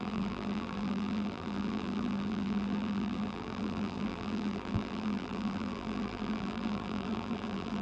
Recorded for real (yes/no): no